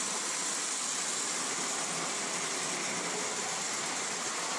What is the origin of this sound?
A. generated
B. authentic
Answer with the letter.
B